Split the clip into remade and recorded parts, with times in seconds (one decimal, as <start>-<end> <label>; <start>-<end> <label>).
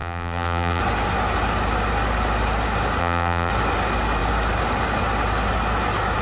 0.0-0.8 remade; 0.8-3.0 recorded; 3.0-3.5 remade; 3.5-6.2 recorded